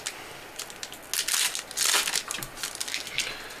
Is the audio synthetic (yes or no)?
no